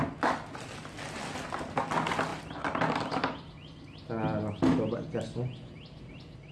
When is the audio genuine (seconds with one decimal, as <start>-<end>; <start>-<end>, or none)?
0.0-6.5

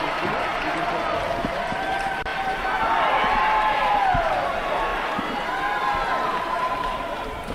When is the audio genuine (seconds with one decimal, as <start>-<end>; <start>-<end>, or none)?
0.5-1.4; 4.9-6.3

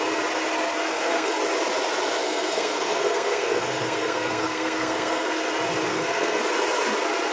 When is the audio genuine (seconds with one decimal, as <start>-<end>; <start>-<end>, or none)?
0.0-0.9; 1.4-2.2; 5.3-5.9; 6.4-7.3